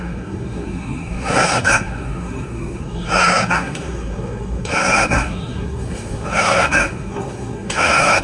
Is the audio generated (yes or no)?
yes